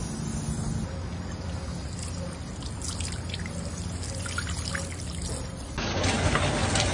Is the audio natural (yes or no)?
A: yes